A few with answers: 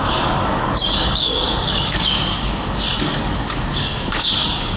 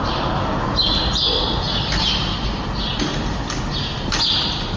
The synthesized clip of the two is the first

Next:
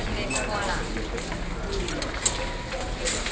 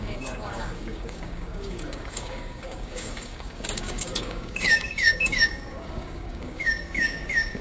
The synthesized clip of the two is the second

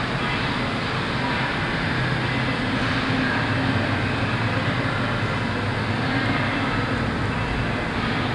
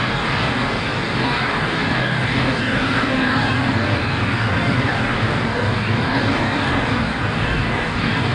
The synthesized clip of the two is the second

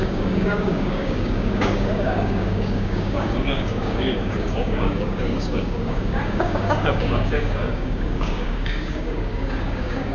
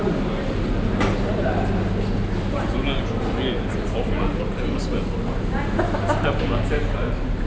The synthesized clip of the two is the first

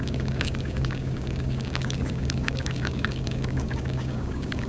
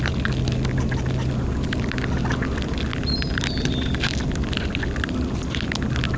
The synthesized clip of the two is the first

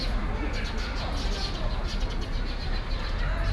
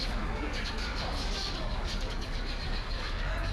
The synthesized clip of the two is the second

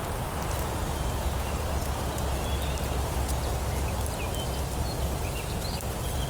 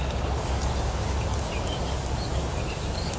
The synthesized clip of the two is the second